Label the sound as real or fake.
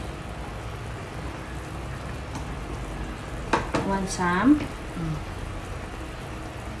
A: real